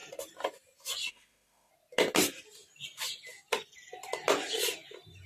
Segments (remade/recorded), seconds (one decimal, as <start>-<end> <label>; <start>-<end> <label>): 0.0-1.1 recorded; 1.1-1.7 remade; 1.7-5.3 recorded